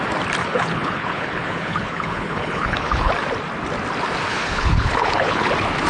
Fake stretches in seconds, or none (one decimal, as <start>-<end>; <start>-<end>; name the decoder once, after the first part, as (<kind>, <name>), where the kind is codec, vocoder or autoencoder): 0.4-3.1 (codec, HILCodec); 4.3-5.5